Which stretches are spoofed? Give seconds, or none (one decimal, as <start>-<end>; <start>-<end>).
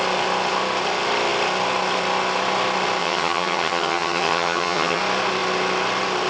3.0-5.0